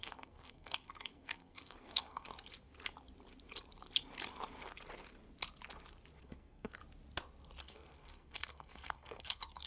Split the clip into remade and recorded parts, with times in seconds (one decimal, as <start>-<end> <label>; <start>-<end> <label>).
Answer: 0.0-2.3 remade; 2.3-6.2 recorded; 6.2-6.8 remade; 6.8-7.6 recorded; 7.6-9.7 remade